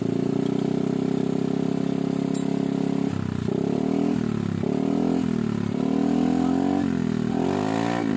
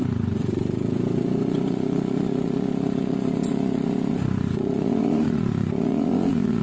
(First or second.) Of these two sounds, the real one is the first